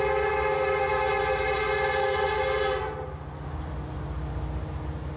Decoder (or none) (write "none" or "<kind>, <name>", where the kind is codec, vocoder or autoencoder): none